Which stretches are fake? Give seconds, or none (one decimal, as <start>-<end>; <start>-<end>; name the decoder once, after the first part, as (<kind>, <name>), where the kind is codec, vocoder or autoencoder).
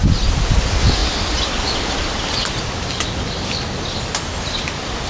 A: none